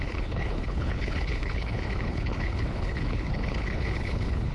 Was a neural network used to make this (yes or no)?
yes